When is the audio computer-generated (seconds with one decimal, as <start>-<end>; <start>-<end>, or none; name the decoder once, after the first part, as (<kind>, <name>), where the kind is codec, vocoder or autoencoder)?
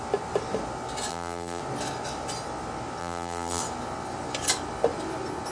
1.1-1.6 (vocoder, BigVGAN v2); 3.0-3.6